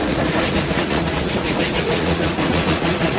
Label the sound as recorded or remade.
remade